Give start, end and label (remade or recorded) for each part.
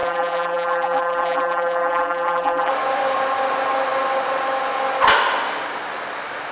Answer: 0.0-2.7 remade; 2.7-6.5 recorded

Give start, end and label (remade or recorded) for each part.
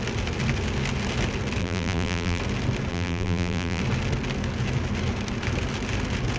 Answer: 0.0-1.6 recorded; 1.6-2.4 remade; 2.4-2.9 recorded; 2.9-3.8 remade; 3.8-6.4 recorded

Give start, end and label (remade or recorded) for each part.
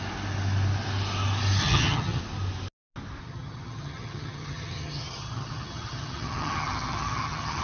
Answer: 0.0-1.6 recorded; 1.6-2.2 remade; 2.2-3.2 recorded; 3.2-7.6 remade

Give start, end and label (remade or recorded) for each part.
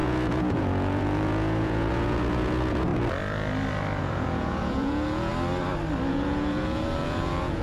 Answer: 0.0-2.9 remade; 2.9-4.0 recorded; 4.0-5.3 remade; 5.3-6.1 recorded; 6.1-7.6 remade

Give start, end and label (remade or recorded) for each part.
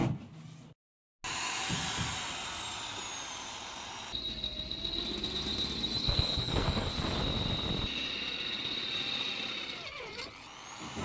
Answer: 0.0-6.0 recorded; 6.0-6.9 remade; 6.9-11.0 recorded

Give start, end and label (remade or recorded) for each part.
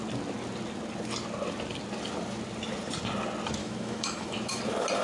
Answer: 0.0-3.6 recorded; 3.6-4.6 remade; 4.6-5.0 recorded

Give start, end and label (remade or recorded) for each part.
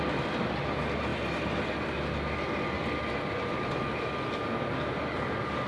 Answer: 0.0-5.7 recorded